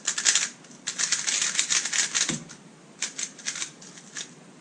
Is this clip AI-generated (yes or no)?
no